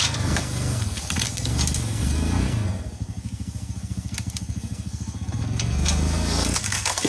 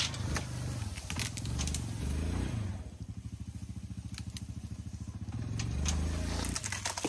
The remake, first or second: first